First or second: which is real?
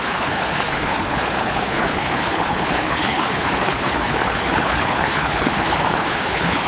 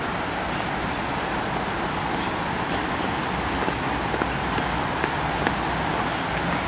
second